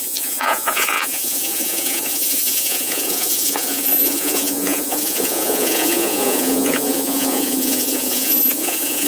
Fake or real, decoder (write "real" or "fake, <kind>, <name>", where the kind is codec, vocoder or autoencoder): fake, vocoder, Vocos